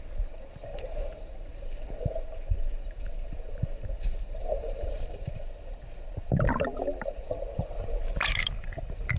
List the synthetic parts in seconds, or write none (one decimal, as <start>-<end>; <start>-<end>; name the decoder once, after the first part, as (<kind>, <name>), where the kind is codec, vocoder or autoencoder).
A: 0.7-5.5 (vocoder, BigVGAN v2); 8.0-8.7